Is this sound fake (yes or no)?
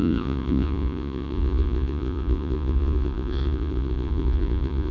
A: yes